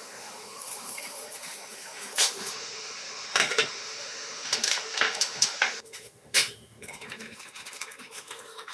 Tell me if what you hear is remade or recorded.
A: remade